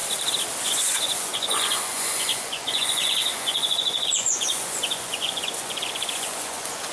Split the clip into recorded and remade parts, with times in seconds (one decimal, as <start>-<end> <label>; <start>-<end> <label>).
0.0-0.6 recorded; 0.6-6.9 remade